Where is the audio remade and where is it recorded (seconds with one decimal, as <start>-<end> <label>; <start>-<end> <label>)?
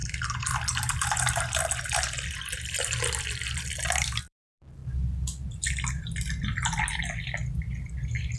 0.0-4.8 remade; 4.8-5.9 recorded; 5.9-8.4 remade